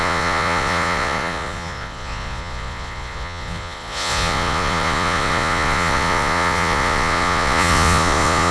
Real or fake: fake